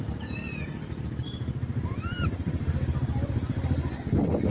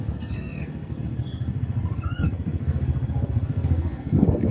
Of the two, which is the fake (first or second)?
second